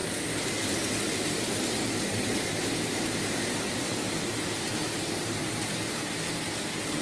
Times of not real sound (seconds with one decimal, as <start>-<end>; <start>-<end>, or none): 2.1-5.7